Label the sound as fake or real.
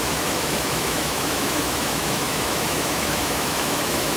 fake